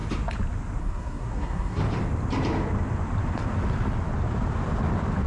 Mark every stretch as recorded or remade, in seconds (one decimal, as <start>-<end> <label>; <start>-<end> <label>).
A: 0.0-0.8 recorded; 0.8-1.8 remade; 1.8-5.3 recorded